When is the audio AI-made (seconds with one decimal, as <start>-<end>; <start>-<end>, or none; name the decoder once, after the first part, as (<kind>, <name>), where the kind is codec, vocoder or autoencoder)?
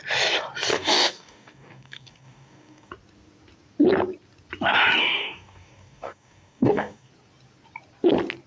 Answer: 0.7-2.9 (codec, DAC); 5.0-7.1